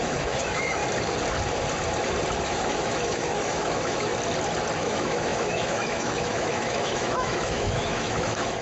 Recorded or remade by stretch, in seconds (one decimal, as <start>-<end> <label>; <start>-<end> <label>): 0.0-0.8 remade; 0.8-2.4 recorded; 2.4-4.1 remade; 4.1-4.8 recorded; 4.8-8.6 remade